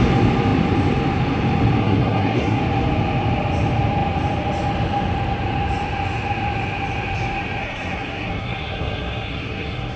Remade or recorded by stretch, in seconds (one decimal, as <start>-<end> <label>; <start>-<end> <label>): 0.0-1.8 recorded; 1.8-2.6 remade; 2.6-7.6 recorded; 7.6-10.0 remade